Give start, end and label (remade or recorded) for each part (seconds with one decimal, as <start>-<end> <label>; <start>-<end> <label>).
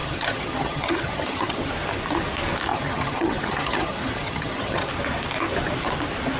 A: 0.0-1.7 remade; 1.7-2.7 recorded; 2.7-4.9 remade; 4.9-6.4 recorded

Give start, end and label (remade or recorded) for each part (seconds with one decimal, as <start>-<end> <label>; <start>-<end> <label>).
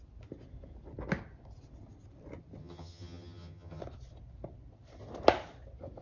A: 0.0-2.6 recorded; 2.6-3.8 remade; 3.8-6.0 recorded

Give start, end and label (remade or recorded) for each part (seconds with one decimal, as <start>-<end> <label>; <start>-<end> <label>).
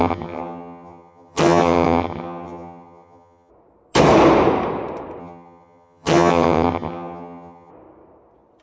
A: 0.0-3.5 remade; 3.5-5.2 recorded; 5.2-7.7 remade; 7.7-8.6 recorded